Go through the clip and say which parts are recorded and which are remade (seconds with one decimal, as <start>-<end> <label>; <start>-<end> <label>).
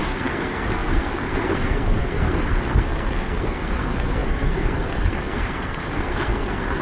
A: 0.0-6.8 remade